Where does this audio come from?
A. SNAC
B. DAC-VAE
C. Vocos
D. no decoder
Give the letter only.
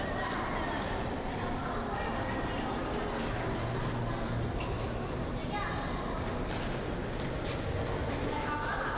D